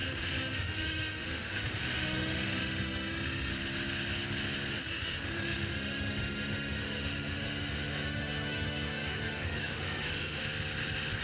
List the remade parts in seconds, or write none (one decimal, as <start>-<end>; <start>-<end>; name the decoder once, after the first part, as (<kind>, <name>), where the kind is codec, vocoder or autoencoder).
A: 0.0-3.5 (autoencoder, DAC-VAE); 4.7-10.4